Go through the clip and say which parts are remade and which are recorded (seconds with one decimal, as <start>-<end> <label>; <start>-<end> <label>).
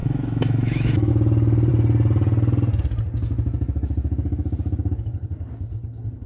0.0-1.1 remade; 1.1-6.3 recorded